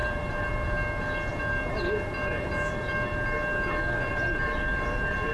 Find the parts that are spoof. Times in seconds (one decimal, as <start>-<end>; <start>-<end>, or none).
0.0-0.5; 1.3-2.8; 4.1-5.3